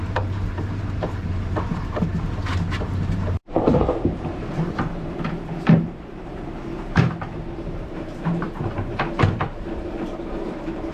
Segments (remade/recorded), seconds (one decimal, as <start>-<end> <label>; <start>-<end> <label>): 0.0-2.1 remade; 2.1-2.8 recorded; 2.8-10.9 remade

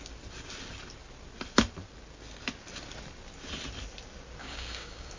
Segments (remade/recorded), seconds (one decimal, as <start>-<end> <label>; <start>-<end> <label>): 0.0-4.4 recorded; 4.4-5.2 remade

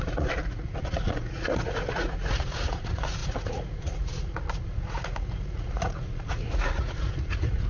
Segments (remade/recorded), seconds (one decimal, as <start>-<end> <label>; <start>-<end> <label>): 0.0-7.7 remade